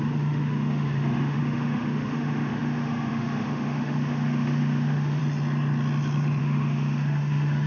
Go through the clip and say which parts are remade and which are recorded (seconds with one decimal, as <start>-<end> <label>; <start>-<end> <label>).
0.0-5.2 remade; 5.2-6.4 recorded; 6.4-7.7 remade

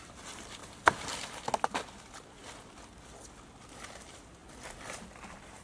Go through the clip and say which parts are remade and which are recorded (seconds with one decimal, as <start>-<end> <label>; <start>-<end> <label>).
0.0-4.4 recorded; 4.4-5.0 remade; 5.0-5.6 recorded

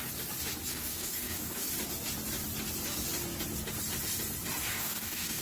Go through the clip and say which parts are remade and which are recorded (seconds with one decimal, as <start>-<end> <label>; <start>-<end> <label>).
0.0-0.7 recorded; 0.7-1.7 remade; 1.7-4.6 recorded; 4.6-5.4 remade

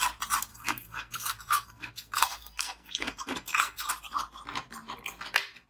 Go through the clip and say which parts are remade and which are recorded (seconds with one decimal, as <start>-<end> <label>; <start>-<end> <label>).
0.0-0.5 recorded; 0.5-3.9 remade; 3.9-5.7 recorded

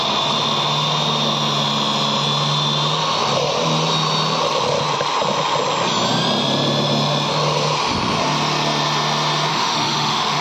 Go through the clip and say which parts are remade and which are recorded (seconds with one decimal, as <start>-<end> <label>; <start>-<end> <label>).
0.0-9.5 recorded; 9.5-10.4 remade

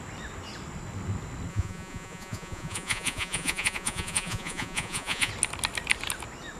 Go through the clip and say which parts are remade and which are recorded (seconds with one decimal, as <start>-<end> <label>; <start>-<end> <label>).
0.0-1.5 recorded; 1.5-5.3 remade; 5.3-6.6 recorded

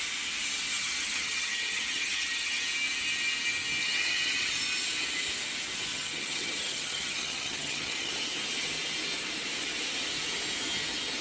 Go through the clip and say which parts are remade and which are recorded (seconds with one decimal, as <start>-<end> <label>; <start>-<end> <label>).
0.0-0.7 recorded; 0.7-2.6 remade; 2.6-3.8 recorded; 3.8-4.5 remade; 4.5-5.9 recorded; 5.9-8.1 remade; 8.1-11.2 recorded

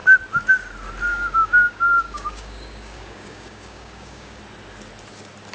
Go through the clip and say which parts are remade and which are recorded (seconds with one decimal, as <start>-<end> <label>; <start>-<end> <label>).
0.0-1.1 recorded; 1.1-4.4 remade; 4.4-5.5 recorded